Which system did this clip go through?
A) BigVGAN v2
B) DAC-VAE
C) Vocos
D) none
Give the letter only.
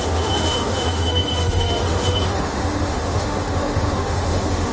B